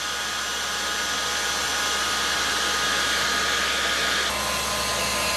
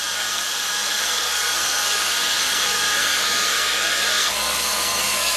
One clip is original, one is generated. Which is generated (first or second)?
second